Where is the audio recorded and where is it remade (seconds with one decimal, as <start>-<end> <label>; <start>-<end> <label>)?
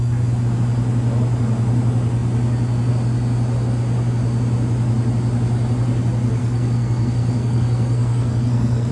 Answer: 0.0-6.4 recorded; 6.4-8.9 remade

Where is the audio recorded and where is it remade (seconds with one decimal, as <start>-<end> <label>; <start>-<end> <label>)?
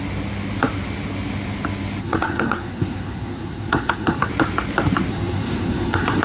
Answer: 0.0-2.0 recorded; 2.0-4.3 remade; 4.3-5.1 recorded; 5.1-6.2 remade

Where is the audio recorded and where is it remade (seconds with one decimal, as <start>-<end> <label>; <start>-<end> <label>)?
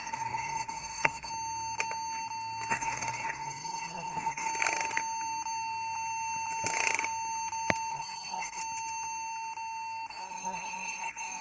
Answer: 0.0-1.3 remade; 1.3-2.7 recorded; 2.7-4.5 remade; 4.5-7.9 recorded; 7.9-8.6 remade; 8.6-10.1 recorded; 10.1-11.4 remade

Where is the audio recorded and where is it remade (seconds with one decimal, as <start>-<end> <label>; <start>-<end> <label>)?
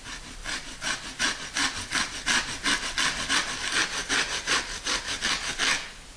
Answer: 0.0-6.2 recorded